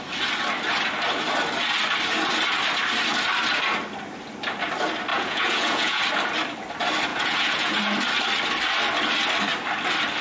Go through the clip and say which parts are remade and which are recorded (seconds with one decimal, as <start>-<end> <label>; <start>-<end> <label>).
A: 0.0-5.1 recorded; 5.1-6.0 remade; 6.0-7.1 recorded; 7.1-7.7 remade; 7.7-10.2 recorded